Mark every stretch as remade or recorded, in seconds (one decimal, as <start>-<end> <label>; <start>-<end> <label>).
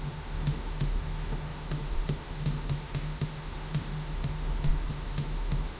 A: 0.0-5.8 remade